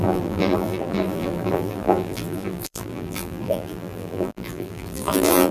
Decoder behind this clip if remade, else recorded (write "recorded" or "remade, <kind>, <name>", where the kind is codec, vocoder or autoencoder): remade, vocoder, BigVGAN v2